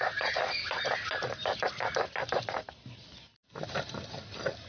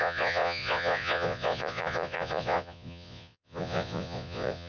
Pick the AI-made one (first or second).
second